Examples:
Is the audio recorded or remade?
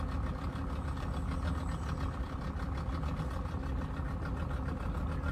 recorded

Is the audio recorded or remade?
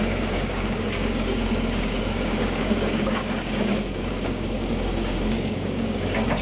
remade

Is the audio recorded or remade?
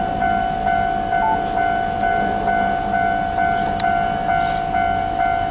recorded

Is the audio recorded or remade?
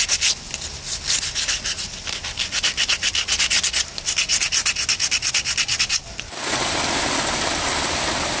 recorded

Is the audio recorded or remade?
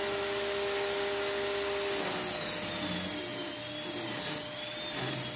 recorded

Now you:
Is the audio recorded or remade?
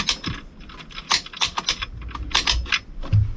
recorded